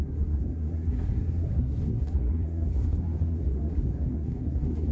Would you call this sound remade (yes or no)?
yes